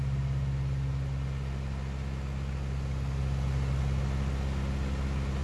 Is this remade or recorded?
recorded